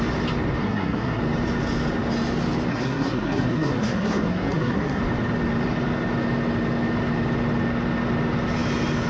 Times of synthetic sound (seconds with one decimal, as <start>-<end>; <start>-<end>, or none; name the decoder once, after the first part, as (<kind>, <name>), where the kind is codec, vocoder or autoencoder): 0.6-1.2 (codec, SNAC); 2.7-5.0